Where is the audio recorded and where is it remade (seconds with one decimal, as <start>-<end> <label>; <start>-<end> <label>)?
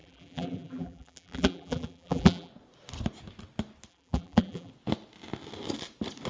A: 0.0-2.5 remade; 2.5-3.9 recorded; 3.9-4.7 remade; 4.7-6.3 recorded